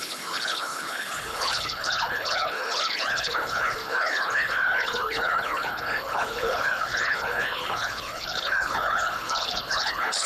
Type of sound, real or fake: fake